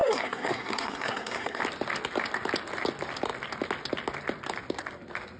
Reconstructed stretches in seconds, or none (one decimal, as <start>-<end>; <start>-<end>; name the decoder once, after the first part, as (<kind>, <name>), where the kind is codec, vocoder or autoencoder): 0.0-1.6 (codec, SNAC)